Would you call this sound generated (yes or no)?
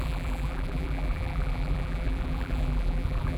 yes